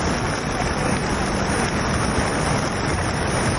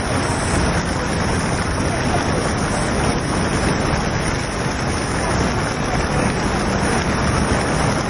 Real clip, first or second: second